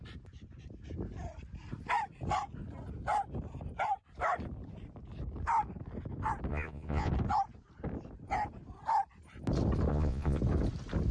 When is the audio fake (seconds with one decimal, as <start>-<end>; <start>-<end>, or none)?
6.5-7.1; 9.9-10.4